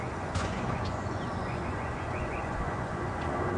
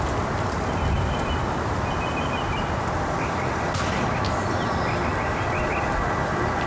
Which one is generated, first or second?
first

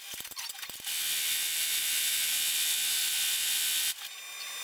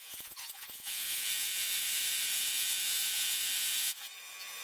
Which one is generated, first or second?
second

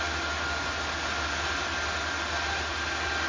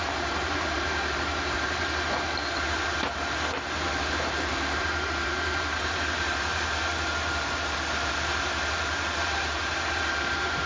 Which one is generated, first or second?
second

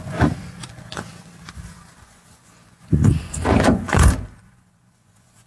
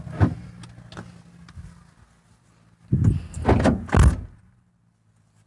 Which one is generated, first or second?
first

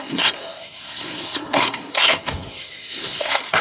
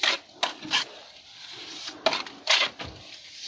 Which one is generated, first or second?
first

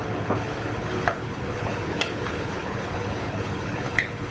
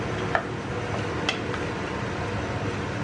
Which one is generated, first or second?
first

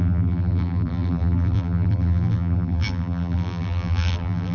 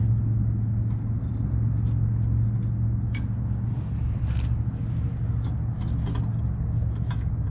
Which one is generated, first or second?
first